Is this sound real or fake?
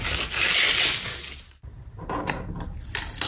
real